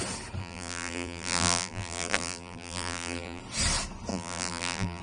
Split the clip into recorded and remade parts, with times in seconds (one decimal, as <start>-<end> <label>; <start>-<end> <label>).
0.0-0.4 recorded; 0.4-3.4 remade; 3.4-4.1 recorded; 4.1-5.0 remade